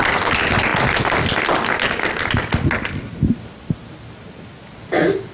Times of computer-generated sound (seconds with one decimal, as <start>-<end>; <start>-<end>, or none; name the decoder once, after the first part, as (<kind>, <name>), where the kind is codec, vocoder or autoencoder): none